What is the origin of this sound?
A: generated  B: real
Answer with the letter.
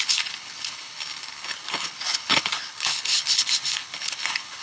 A